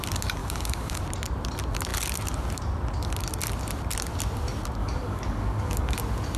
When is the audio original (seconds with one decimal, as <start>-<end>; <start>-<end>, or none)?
0.0-0.4; 1.0-4.8; 6.0-6.4